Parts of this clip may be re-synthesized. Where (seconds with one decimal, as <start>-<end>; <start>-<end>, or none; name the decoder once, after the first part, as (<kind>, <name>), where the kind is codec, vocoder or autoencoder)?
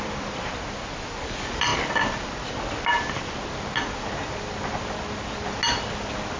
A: none